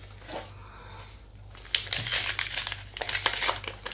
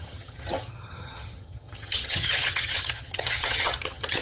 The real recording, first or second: first